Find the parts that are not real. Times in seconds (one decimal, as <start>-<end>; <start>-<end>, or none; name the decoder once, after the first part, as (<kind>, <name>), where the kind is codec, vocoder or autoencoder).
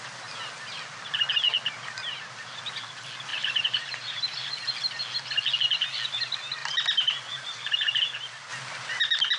3.3-4.5 (vocoder, BigVGAN v2); 6.6-8.0